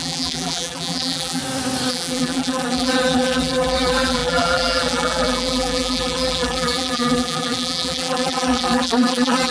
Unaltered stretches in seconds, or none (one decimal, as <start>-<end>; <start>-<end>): 1.4-1.9